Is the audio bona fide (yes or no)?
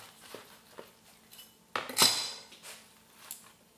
yes